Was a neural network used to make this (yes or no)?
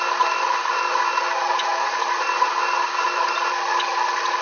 no